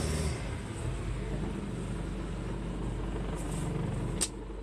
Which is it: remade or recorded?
recorded